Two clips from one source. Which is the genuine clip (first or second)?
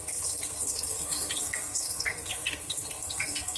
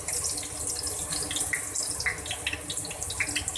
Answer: second